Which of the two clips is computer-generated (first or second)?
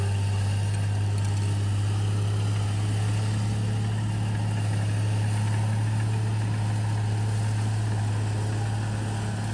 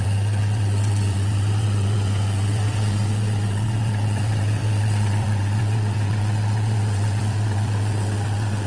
second